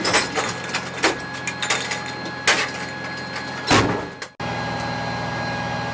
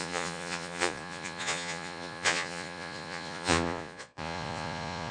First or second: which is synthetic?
second